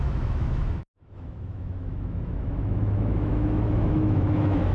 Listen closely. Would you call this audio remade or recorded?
remade